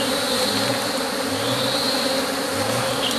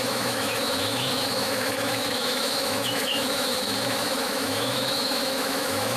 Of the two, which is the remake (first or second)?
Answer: second